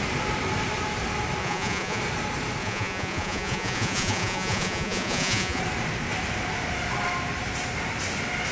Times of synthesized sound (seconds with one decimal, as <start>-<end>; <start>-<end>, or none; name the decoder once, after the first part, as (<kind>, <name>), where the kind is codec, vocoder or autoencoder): 1.4-2.0 (vocoder, Vocos); 2.6-5.6